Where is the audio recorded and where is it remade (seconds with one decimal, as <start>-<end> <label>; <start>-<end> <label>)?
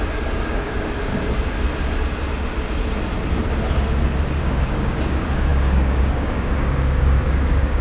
0.0-1.1 remade; 1.1-4.4 recorded; 4.4-7.8 remade